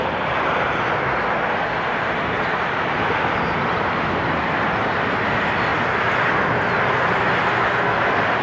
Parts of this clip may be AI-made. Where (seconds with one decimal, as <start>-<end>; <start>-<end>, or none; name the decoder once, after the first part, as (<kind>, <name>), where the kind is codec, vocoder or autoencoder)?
none